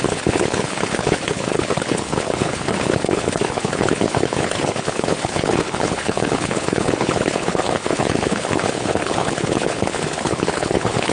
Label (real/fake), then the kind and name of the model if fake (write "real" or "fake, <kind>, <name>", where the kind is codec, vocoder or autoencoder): fake, codec, HILCodec